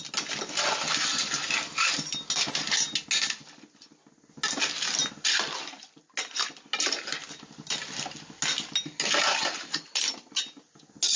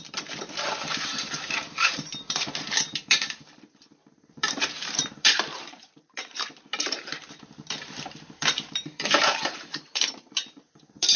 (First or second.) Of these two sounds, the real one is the first